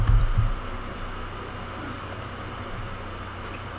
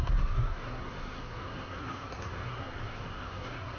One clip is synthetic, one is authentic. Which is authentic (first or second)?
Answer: first